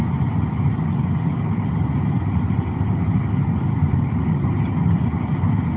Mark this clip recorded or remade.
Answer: recorded